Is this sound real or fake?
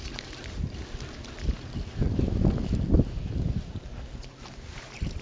real